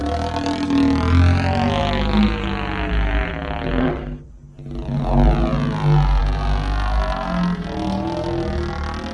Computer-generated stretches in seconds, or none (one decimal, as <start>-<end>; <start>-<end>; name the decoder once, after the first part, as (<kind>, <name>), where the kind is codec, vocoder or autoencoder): 3.8-4.3 (codec, SNAC)